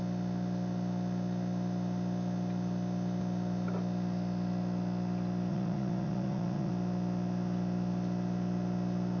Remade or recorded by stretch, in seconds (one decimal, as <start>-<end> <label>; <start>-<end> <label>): 0.0-5.5 recorded; 5.5-6.7 remade; 6.7-9.2 recorded